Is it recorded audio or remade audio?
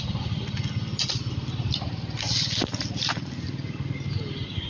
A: recorded